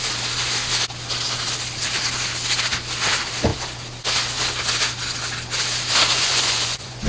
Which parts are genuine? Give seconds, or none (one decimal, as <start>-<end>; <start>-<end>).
0.0-6.1